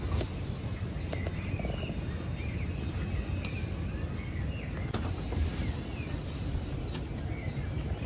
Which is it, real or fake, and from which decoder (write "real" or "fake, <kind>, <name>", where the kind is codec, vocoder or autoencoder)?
real